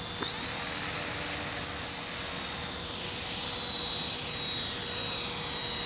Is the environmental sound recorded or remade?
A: recorded